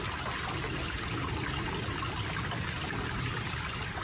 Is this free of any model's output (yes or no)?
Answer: yes